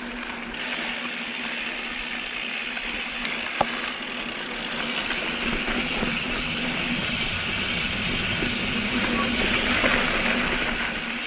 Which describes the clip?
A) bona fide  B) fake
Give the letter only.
A